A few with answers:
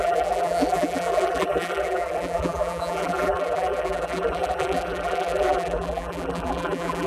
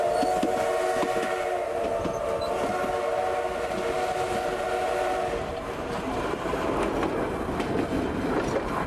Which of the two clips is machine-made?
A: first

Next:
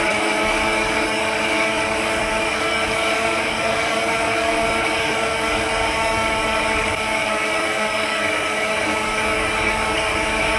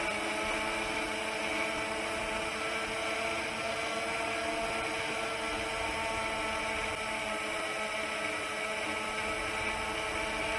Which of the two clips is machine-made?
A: first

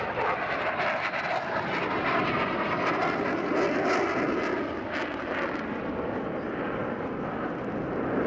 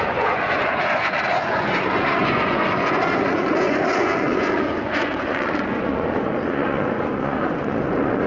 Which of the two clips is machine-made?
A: second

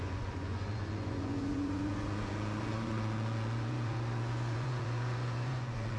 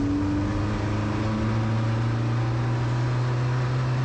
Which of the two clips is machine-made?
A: first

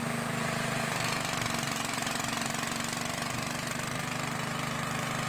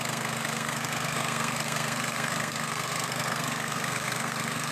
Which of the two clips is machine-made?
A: second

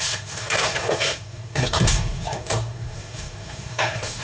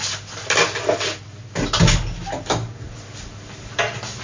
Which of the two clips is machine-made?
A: first